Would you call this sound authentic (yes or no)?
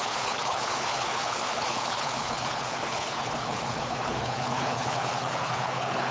no